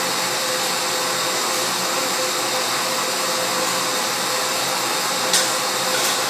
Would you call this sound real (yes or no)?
yes